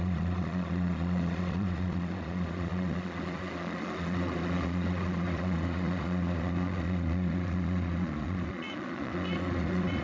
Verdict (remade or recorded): remade